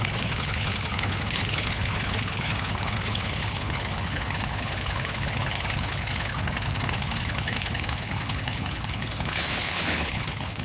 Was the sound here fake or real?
fake